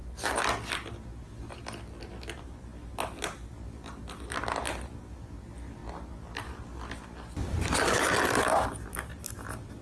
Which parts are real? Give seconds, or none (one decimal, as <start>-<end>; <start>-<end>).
0.0-9.8